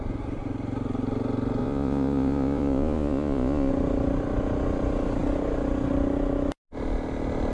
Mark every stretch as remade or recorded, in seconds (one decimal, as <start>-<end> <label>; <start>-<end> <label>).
0.0-1.6 recorded; 1.6-3.7 remade; 3.7-7.5 recorded

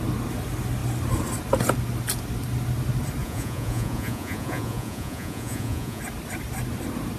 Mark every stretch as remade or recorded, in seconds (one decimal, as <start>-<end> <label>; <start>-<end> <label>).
0.0-3.2 recorded; 3.2-6.0 remade; 6.0-7.2 recorded